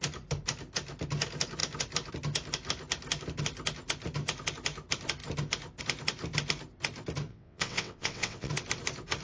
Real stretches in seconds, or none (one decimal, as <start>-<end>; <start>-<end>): 0.0-7.3; 8.5-9.2